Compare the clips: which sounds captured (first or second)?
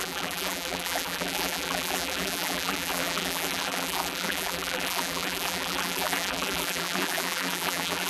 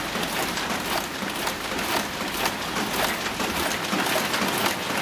second